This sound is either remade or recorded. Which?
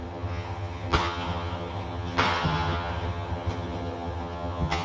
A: remade